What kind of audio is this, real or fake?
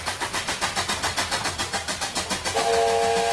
real